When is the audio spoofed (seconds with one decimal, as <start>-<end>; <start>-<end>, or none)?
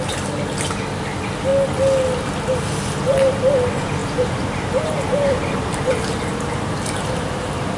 4.0-7.8